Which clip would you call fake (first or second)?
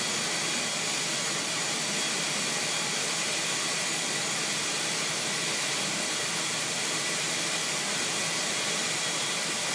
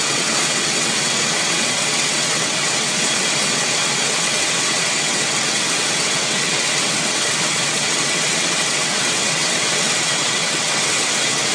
second